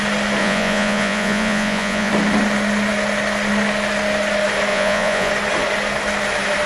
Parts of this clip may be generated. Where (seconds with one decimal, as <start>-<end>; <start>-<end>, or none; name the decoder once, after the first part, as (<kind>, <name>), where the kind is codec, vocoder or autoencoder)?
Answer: 0.4-2.1 (vocoder, Vocos); 4.7-5.3